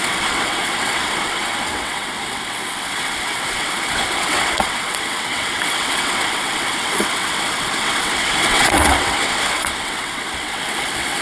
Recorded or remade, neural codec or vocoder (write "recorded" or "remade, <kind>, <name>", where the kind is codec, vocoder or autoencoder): remade, vocoder, WaveNeXt